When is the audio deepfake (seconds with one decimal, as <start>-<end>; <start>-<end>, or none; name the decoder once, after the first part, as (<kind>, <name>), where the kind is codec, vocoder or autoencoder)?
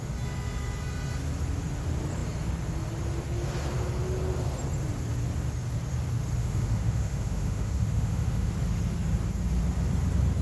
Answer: 6.4-8.5 (autoencoder, DAC-VAE)